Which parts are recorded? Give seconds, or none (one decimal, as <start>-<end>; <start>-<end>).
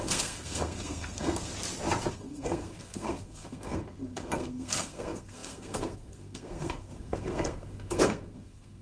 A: 1.5-2.1